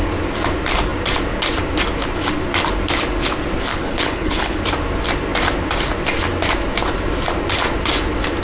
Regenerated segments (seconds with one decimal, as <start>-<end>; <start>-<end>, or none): 3.7-4.6